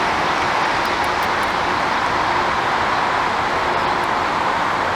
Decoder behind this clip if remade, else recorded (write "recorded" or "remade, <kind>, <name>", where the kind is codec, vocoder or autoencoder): recorded